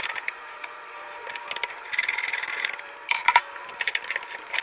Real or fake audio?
fake